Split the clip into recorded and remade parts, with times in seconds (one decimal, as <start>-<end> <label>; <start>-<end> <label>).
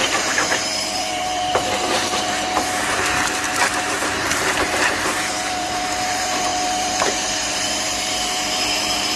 0.0-9.2 remade